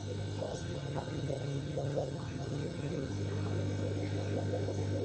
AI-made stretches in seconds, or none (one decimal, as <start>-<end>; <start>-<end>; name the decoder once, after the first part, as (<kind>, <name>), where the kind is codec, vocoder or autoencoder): 0.5-3.1 (vocoder, HiFi-GAN)